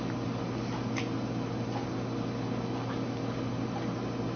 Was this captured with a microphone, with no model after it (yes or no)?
yes